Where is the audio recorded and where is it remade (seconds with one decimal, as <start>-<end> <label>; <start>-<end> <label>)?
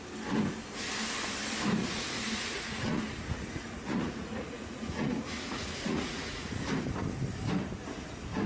0.0-1.8 recorded; 1.8-6.6 remade; 6.6-8.5 recorded